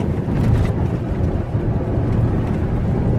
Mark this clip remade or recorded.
recorded